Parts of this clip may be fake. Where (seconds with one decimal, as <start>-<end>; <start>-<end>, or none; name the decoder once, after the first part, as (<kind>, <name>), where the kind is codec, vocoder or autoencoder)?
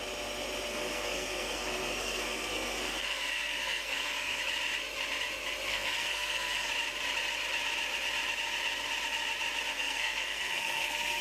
0.7-4.4 (codec, SNAC); 5.7-6.7; 9.7-11.2